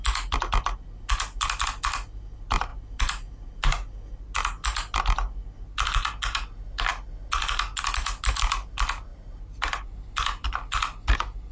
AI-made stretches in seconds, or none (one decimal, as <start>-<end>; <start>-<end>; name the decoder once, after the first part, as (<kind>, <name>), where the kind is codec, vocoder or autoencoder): none